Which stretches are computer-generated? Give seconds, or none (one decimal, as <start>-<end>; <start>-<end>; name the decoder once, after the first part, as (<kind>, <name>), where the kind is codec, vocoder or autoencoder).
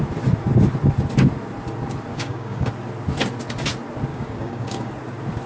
2.1-2.7 (codec, DAC); 4.1-4.9